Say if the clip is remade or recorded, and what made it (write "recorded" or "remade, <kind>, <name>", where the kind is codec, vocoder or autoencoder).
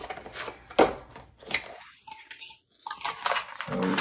recorded